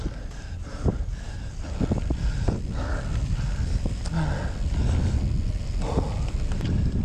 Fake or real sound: real